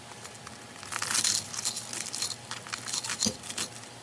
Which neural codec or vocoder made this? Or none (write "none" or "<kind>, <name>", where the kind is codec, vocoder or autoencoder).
none